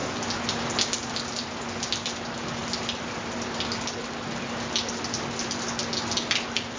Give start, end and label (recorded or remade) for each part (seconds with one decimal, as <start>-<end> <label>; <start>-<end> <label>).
0.0-6.8 recorded